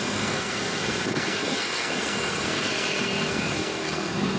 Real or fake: fake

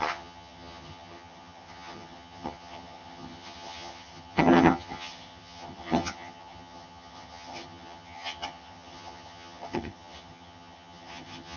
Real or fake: fake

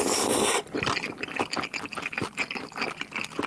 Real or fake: real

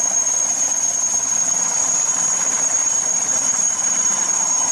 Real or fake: real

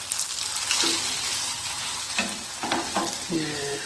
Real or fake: real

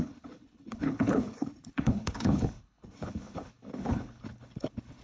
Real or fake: fake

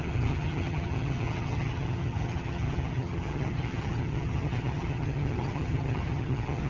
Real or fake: fake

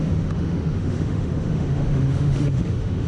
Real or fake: fake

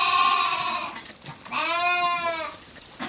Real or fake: real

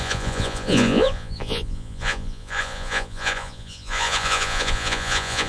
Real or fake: fake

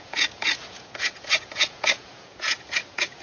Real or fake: fake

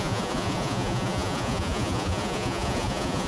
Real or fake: fake